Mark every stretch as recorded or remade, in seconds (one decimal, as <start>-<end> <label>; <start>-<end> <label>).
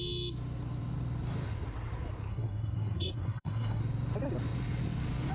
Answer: 0.0-2.3 recorded; 2.3-3.8 remade; 3.8-5.3 recorded